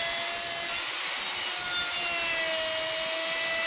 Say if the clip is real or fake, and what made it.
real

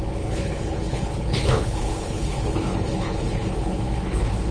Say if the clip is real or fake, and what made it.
fake, codec, HILCodec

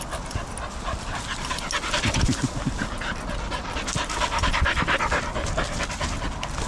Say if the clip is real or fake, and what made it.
real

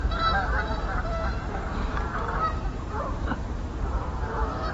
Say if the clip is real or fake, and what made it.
fake, vocoder, BigVGAN v2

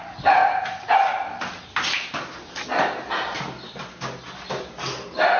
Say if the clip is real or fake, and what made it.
real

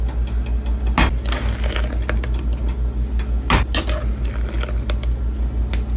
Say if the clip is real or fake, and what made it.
real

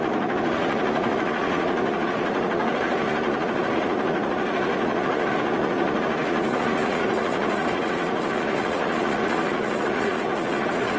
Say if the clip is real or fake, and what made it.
fake, vocoder, Vocos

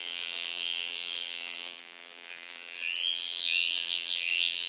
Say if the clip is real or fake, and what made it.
fake, vocoder, BigVGAN v2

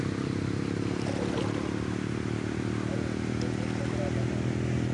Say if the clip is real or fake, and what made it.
real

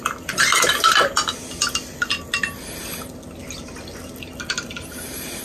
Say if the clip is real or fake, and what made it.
real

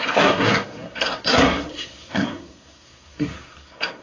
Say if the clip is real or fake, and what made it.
fake, codec, SNAC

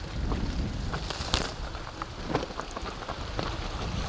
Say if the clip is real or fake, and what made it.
real